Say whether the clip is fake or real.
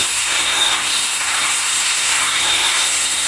fake